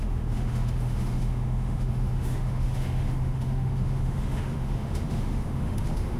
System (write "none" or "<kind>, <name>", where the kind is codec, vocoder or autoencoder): autoencoder, DAC-VAE